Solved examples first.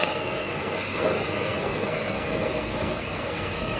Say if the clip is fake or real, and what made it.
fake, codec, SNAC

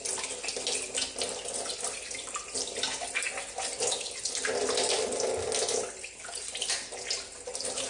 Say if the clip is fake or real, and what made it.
real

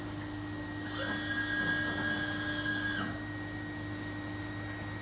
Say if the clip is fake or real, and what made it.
real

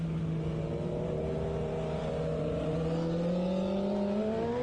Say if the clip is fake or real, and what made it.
real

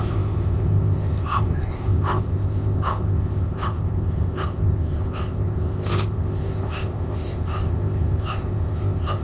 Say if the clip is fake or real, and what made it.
fake, codec, ZipCodec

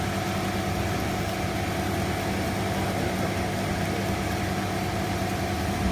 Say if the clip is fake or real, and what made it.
real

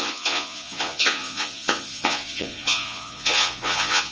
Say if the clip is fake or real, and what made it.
fake, vocoder, Vocos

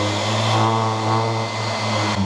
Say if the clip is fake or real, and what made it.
real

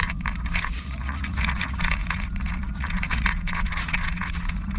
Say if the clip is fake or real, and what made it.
fake, vocoder, Vocos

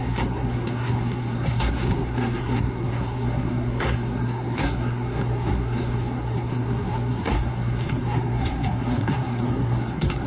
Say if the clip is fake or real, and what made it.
fake, codec, SNAC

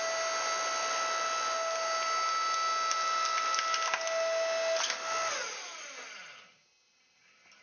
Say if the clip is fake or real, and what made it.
real